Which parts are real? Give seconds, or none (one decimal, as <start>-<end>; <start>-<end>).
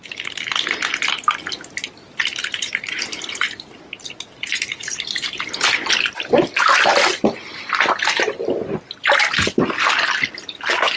0.0-2.2; 3.8-4.5; 5.4-11.0